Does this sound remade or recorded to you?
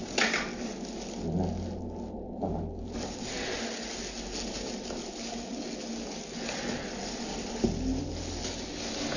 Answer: recorded